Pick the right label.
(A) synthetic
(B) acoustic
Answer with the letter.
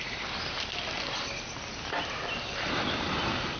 B